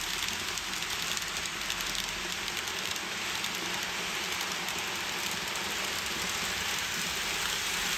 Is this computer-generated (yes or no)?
no